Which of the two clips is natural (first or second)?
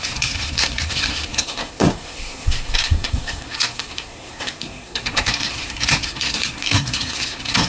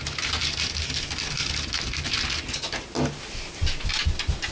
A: second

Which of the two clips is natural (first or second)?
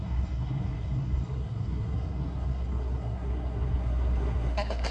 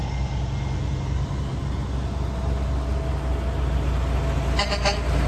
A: second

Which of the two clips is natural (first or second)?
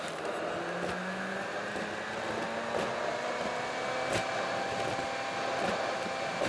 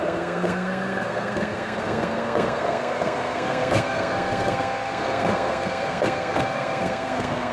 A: first